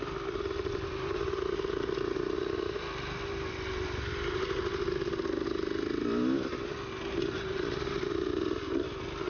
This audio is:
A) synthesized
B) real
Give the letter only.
B